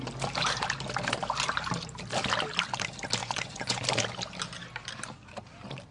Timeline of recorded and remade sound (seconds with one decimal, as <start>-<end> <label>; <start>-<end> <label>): 0.0-3.2 recorded; 3.2-3.8 remade; 3.8-5.9 recorded